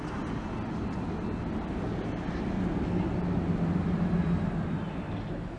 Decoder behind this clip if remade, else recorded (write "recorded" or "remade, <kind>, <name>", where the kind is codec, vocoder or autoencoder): recorded